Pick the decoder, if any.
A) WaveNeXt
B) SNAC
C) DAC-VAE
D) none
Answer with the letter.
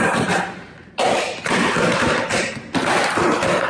D